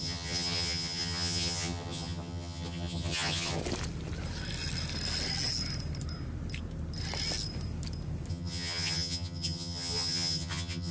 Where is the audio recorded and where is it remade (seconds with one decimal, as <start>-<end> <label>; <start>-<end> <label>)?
0.0-3.6 remade; 3.6-8.3 recorded; 8.3-10.9 remade